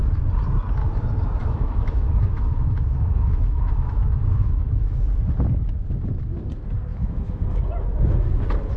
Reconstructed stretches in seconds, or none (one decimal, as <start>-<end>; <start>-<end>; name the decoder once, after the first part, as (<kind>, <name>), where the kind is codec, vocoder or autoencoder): 1.4-5.1 (autoencoder, DAC-VAE); 6.9-7.6